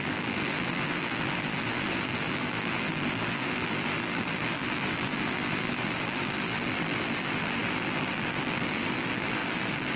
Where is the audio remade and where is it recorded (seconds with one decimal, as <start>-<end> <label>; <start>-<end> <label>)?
0.0-10.0 remade